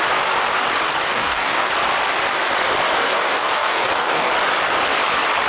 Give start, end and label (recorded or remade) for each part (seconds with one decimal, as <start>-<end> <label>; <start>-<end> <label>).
0.0-1.1 recorded; 1.1-1.7 remade; 1.7-3.0 recorded; 3.0-4.3 remade; 4.3-5.5 recorded